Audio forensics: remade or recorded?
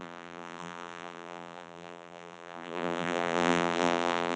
remade